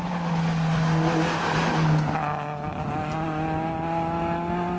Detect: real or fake real